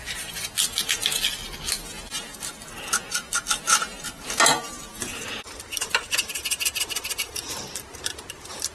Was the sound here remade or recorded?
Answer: recorded